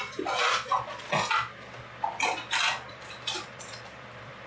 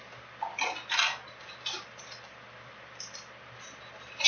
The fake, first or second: first